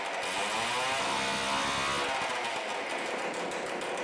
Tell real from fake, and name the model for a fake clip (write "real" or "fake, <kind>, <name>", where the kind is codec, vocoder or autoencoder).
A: real